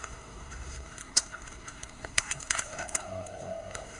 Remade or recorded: remade